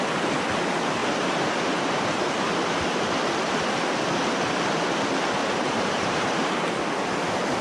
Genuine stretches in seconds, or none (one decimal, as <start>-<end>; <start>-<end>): 0.0-1.0; 1.8-5.4; 6.8-7.6